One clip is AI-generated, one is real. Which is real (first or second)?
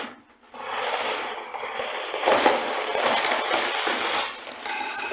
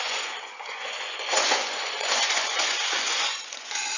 first